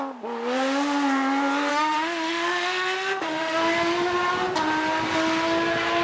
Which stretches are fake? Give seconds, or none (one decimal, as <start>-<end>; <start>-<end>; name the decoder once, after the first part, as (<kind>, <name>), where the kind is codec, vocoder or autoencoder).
1.7-3.6 (autoencoder, DAC-VAE)